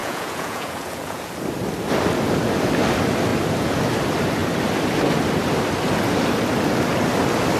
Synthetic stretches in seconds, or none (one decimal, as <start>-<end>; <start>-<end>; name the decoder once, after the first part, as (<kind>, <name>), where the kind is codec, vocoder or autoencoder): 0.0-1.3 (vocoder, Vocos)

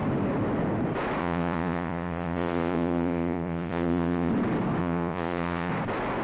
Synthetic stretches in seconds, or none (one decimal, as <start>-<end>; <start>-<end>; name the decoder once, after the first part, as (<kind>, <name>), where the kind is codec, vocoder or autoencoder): 1.2-4.3 (vocoder, Vocos); 4.8-5.7

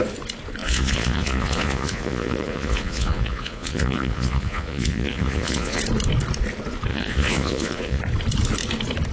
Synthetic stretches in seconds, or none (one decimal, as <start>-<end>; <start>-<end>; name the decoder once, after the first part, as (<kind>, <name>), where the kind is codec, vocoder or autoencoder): 0.6-5.8 (vocoder, Vocos); 6.9-8.0

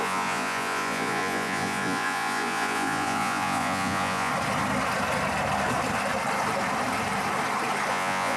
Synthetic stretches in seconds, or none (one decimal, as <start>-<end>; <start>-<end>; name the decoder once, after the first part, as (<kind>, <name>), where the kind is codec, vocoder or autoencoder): 0.0-4.3 (vocoder, Vocos); 7.9-8.4

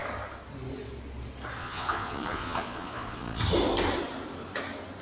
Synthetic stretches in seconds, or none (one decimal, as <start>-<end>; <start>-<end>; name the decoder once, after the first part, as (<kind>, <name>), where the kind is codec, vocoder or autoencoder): 1.6-3.4 (vocoder, Vocos)